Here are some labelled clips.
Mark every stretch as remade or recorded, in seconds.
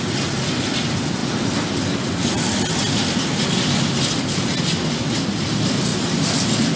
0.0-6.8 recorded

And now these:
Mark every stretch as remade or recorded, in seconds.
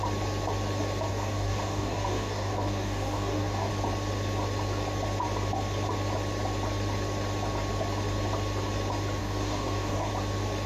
0.0-1.1 recorded; 1.1-3.7 remade; 3.7-9.2 recorded; 9.2-10.1 remade; 10.1-10.7 recorded